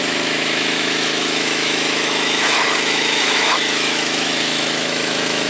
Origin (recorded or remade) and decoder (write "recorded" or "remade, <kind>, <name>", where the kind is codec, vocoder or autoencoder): remade, autoencoder, DAC-VAE